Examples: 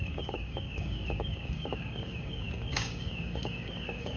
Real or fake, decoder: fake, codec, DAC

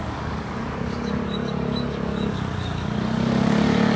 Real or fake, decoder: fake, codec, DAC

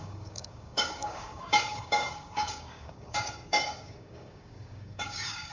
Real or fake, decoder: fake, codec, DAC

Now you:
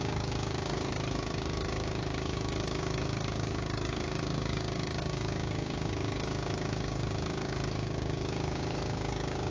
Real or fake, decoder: fake, codec, DAC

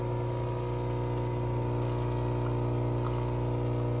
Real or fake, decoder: real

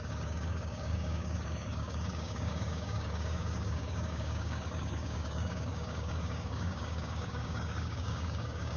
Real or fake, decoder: fake, codec, DAC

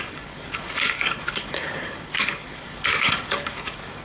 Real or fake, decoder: fake, codec, DAC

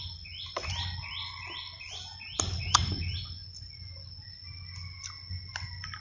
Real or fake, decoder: real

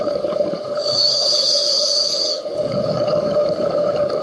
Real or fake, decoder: fake, codec, DAC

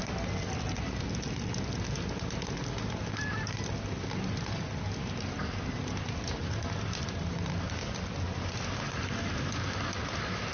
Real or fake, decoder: real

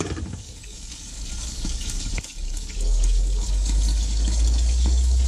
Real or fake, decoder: fake, codec, DAC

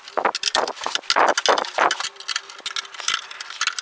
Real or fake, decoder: real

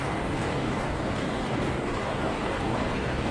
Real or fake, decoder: fake, codec, DAC